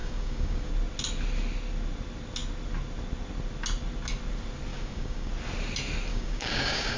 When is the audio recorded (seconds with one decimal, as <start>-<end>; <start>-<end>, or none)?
0.7-4.7; 5.3-6.1

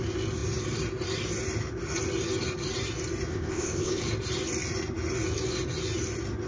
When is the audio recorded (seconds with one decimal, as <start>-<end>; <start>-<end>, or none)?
0.0-3.3; 4.0-6.5